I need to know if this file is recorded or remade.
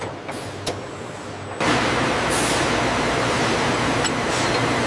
recorded